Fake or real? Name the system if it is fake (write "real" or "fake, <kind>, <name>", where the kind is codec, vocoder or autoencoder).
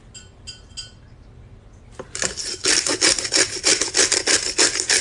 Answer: real